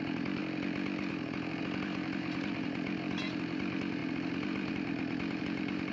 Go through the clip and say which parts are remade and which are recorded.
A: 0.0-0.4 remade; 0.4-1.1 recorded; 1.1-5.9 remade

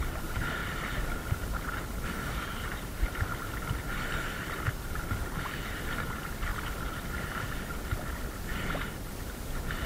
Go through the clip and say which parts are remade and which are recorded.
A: 0.0-0.6 remade; 0.6-2.5 recorded; 2.5-3.3 remade; 3.3-5.7 recorded; 5.7-6.5 remade; 6.5-9.2 recorded; 9.2-9.9 remade

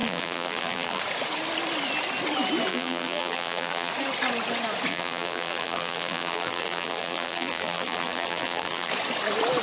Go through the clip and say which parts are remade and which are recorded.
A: 0.0-1.0 remade; 1.0-2.7 recorded; 2.7-3.9 remade; 3.9-4.9 recorded; 4.9-8.9 remade; 8.9-9.6 recorded